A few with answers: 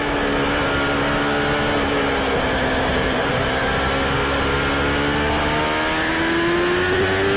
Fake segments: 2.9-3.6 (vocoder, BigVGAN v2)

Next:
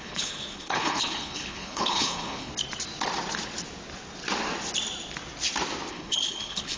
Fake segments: 0.0-2.5 (codec, HILCodec); 5.9-6.8

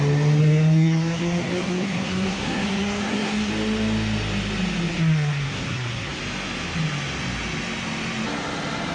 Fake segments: 0.4-3.5 (codec, SNAC); 4.9-6.2

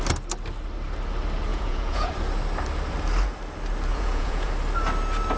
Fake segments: 1.5-2.1 (vocoder, Vocos); 3.9-4.5

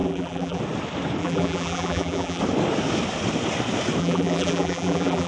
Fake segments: 0.0-0.6 (vocoder, BigVGAN v2); 1.2-2.4; 4.0-5.3